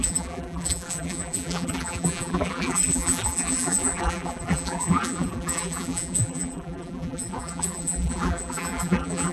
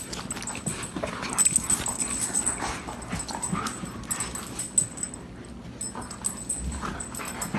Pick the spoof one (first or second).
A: first